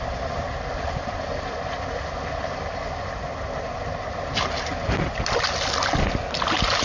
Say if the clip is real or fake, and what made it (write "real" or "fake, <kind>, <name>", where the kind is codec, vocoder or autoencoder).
real